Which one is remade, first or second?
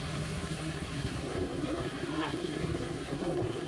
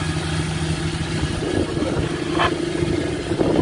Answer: first